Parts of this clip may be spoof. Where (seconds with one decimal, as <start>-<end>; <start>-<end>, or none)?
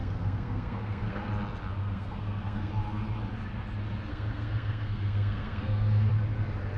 0.0-1.3; 1.8-2.7; 4.1-6.1